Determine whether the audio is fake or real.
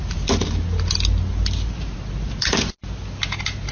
real